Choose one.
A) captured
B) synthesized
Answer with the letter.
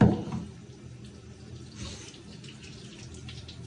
B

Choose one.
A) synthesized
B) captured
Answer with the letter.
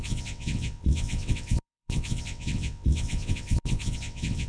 A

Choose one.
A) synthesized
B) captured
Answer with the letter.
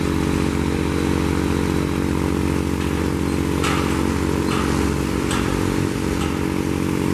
B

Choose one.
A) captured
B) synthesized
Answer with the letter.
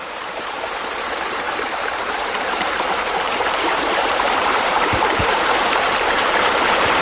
B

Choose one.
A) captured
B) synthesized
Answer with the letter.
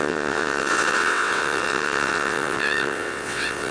B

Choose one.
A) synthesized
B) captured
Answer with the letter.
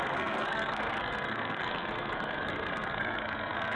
A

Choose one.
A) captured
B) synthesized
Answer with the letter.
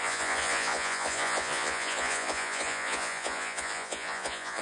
B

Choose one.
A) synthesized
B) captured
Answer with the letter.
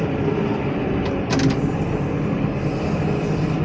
B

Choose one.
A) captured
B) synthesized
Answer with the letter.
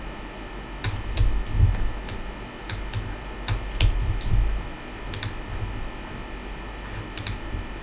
A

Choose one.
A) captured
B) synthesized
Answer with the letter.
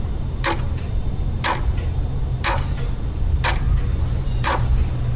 A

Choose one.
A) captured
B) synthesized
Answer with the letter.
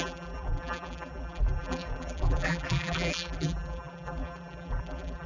B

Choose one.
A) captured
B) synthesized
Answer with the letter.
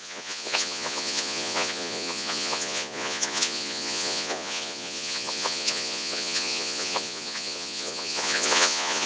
B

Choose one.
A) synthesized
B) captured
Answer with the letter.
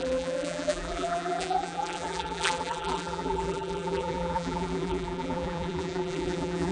A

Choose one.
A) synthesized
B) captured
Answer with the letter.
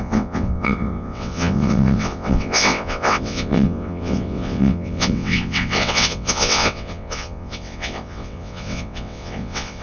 A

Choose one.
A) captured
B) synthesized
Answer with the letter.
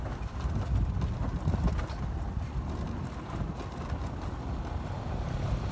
A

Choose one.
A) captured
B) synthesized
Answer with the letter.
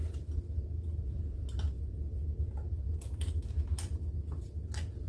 A